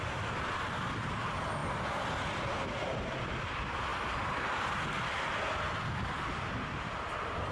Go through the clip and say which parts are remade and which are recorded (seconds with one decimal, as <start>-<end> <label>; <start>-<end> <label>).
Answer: 0.0-7.5 recorded

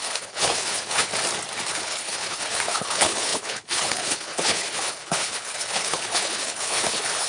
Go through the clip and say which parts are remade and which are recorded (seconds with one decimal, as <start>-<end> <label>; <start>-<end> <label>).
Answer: 0.0-1.1 remade; 1.1-1.7 recorded; 1.7-7.3 remade